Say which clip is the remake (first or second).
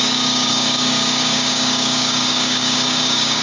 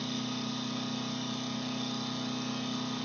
first